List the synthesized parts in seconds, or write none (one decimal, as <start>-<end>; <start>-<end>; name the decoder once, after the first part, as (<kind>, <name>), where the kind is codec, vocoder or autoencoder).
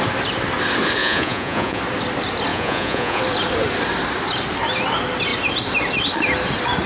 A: 1.0-1.8 (vocoder, Vocos); 2.5-3.2